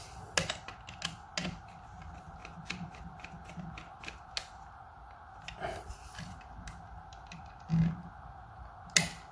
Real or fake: real